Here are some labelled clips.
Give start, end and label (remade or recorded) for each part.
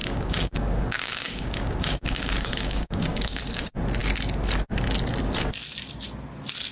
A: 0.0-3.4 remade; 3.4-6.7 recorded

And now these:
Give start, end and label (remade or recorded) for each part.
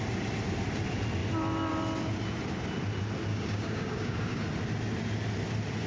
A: 0.0-3.3 recorded; 3.3-4.4 remade; 4.4-5.9 recorded